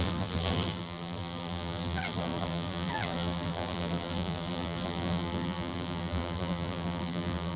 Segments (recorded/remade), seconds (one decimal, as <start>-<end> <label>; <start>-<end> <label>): 0.0-7.6 remade